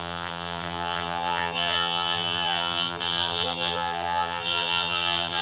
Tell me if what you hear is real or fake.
fake